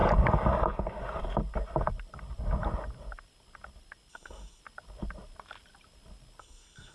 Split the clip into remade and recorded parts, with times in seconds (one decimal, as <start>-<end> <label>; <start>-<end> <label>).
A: 0.0-4.1 recorded; 4.1-4.6 remade; 4.6-6.4 recorded; 6.4-6.9 remade